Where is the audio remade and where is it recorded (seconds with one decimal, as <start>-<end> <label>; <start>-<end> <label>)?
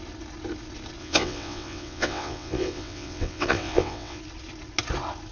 0.0-1.0 recorded; 1.0-4.2 remade; 4.2-5.3 recorded